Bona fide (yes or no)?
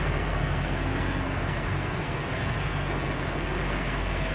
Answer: no